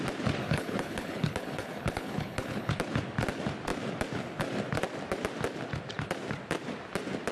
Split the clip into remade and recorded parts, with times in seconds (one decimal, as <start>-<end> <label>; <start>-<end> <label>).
0.0-0.4 recorded; 0.4-2.7 remade; 2.7-7.3 recorded